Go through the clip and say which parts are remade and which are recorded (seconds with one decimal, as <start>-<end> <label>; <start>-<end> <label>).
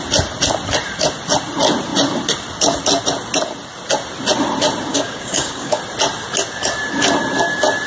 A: 0.0-4.9 recorded; 4.9-5.8 remade; 5.8-7.9 recorded